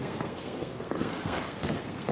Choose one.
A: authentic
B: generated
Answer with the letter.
B